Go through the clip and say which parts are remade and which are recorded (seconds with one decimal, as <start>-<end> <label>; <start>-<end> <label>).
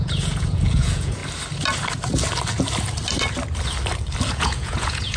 0.0-1.2 remade; 1.2-4.3 recorded; 4.3-5.2 remade